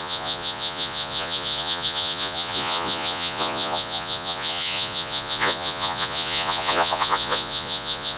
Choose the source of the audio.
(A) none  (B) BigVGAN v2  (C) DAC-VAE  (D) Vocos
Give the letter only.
D